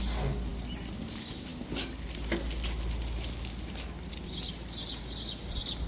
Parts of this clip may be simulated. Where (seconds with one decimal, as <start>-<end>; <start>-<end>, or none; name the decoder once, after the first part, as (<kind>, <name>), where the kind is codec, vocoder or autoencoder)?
none